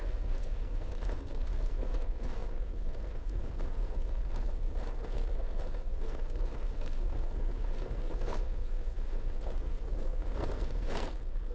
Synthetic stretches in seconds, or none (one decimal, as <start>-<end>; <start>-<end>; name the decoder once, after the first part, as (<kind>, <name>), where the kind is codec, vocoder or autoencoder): 0.0-11.5 (codec, SNAC)